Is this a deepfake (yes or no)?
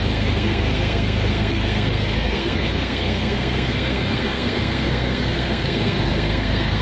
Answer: yes